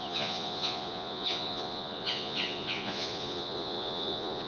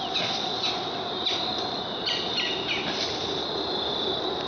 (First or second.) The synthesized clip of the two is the first